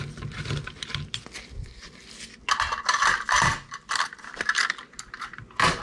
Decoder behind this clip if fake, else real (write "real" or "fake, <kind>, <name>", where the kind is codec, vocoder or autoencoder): real